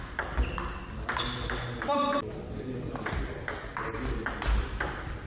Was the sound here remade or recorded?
recorded